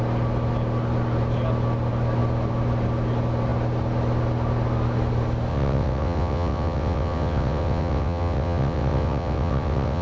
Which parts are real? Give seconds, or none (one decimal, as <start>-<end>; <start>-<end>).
0.0-5.5